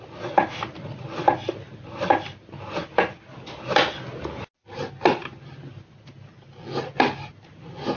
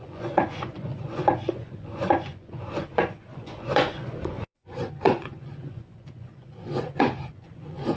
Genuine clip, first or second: first